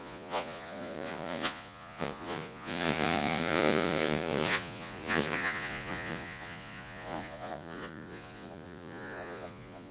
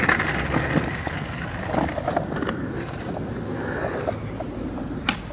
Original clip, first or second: second